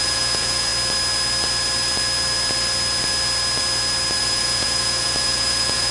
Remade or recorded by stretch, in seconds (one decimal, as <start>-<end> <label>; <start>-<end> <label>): 0.0-0.7 remade; 0.7-4.2 recorded; 4.2-5.9 remade